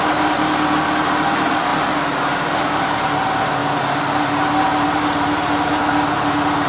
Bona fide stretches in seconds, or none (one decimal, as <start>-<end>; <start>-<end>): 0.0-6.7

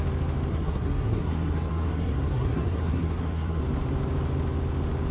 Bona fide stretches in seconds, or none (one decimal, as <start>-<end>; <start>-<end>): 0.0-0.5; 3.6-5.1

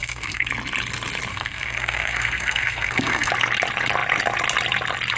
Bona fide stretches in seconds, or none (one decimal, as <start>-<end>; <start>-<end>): 0.5-1.3; 3.3-5.2

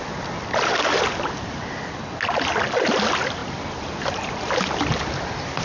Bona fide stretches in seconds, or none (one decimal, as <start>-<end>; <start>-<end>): 0.0-5.6

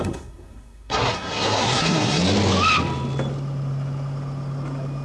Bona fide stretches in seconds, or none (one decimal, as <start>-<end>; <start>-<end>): 2.2-5.0

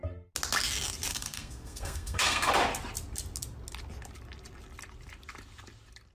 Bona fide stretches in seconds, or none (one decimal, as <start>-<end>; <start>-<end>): 0.0-1.1; 2.5-6.1